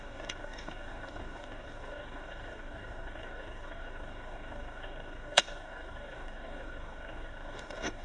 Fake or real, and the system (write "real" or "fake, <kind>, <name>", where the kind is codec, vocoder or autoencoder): fake, codec, DAC